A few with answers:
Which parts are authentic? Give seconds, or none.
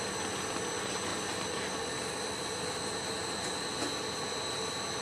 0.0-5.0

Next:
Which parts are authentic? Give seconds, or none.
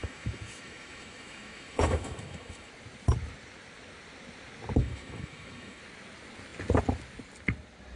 2.7-4.8; 5.8-8.0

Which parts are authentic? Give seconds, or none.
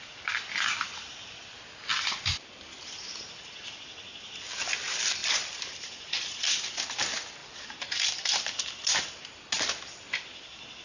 0.0-1.9; 2.5-5.2; 6.4-7.4; 8.1-10.8